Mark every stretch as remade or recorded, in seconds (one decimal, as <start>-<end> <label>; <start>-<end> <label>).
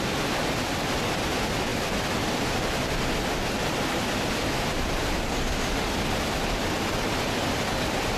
0.0-8.2 recorded